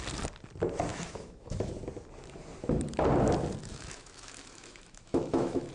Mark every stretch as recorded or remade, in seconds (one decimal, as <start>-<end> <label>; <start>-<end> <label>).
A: 0.0-0.9 recorded; 0.9-1.7 remade; 1.7-3.6 recorded; 3.6-5.7 remade